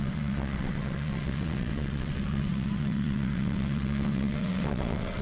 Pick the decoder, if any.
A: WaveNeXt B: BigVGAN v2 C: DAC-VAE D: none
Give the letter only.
A